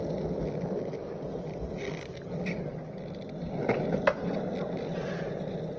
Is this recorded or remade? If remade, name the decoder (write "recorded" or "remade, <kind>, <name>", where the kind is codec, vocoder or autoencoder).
recorded